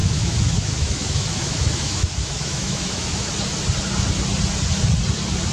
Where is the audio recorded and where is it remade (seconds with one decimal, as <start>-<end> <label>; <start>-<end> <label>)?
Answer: 0.0-3.3 remade; 3.3-5.5 recorded